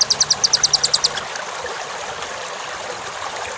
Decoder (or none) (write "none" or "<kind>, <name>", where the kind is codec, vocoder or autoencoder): vocoder, BigVGAN v2